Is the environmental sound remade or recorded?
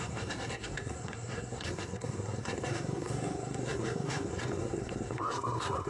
remade